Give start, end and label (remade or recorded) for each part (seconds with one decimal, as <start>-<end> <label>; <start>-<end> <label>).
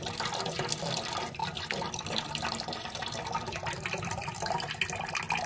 0.0-1.4 recorded; 1.4-4.7 remade; 4.7-5.5 recorded